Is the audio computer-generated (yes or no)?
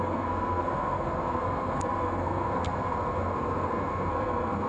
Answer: yes